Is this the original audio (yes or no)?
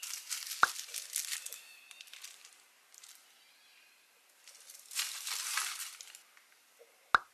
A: yes